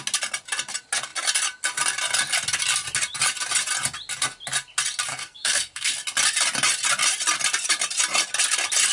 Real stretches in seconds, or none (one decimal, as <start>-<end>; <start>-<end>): 0.0-5.1; 5.9-8.9